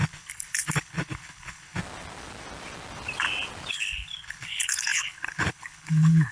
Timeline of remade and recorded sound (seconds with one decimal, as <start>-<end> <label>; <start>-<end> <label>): 0.0-1.8 remade; 1.8-3.7 recorded; 3.7-6.3 remade